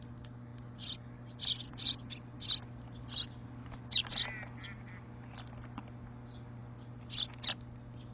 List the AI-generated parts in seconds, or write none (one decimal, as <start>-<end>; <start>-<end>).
0.5-3.8